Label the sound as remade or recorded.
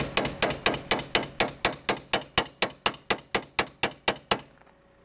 recorded